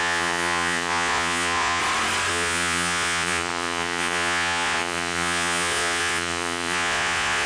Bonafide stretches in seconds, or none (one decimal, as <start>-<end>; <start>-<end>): 1.8-2.3